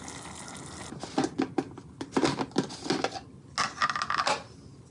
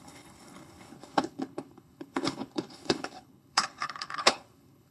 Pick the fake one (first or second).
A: second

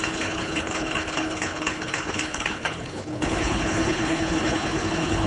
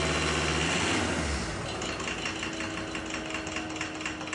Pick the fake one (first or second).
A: first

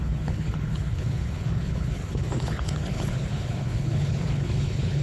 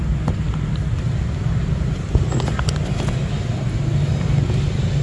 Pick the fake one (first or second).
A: first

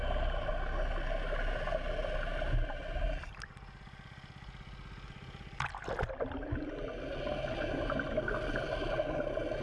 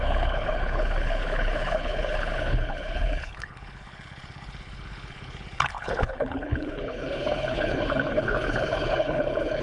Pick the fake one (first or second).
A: second